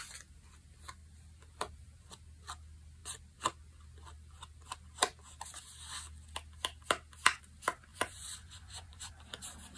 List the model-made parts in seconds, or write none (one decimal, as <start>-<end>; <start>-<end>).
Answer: 7.9-9.1